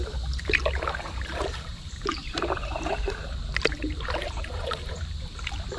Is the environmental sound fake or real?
fake